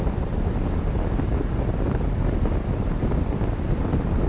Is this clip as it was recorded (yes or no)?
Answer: yes